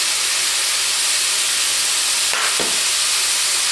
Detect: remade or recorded recorded